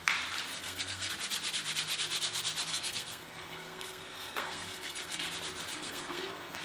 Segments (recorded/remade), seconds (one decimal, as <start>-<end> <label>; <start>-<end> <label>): 0.0-0.5 recorded; 0.5-1.1 remade; 1.1-2.7 recorded; 2.7-5.3 remade; 5.3-5.7 recorded; 5.7-6.6 remade